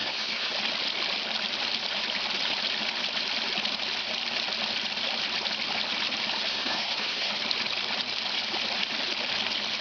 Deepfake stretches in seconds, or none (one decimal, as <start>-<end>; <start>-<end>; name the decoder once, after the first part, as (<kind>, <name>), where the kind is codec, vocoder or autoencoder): 0.0-0.5 (codec, SNAC); 6.5-7.3